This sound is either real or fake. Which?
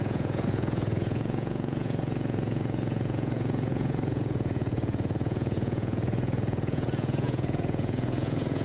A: fake